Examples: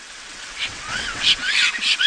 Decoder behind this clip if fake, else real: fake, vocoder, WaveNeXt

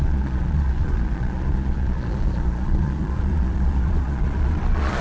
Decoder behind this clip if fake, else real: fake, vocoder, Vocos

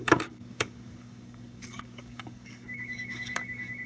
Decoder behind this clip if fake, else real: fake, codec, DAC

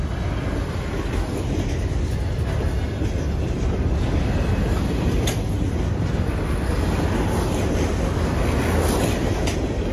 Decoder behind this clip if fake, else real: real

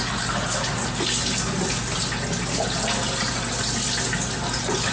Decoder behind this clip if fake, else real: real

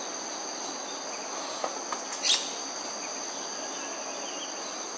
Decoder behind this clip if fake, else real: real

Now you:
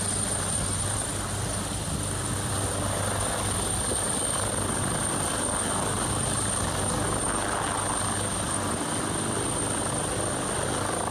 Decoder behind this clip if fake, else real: real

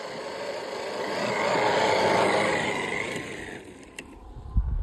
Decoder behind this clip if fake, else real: fake, vocoder, BigVGAN v2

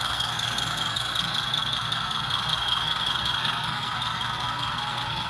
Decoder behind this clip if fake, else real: fake, codec, SNAC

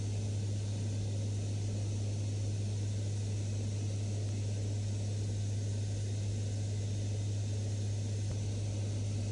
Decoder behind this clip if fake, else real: real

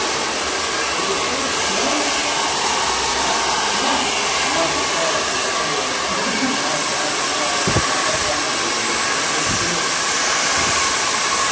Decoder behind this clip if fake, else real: real